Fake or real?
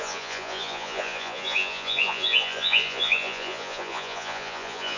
fake